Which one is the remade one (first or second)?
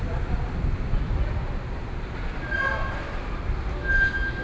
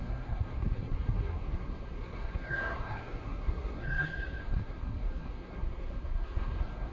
second